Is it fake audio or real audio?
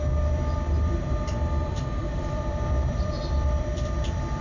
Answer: fake